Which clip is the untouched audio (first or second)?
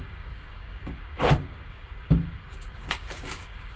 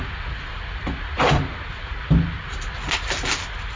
second